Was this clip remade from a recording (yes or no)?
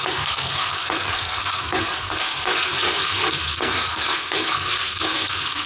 yes